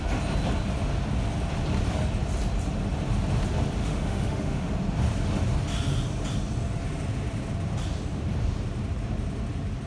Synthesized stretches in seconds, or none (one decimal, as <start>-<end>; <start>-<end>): 3.8-4.7